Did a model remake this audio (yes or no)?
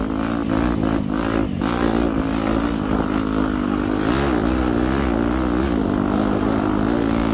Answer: no